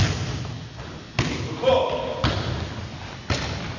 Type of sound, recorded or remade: recorded